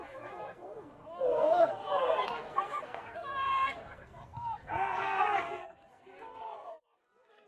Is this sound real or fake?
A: fake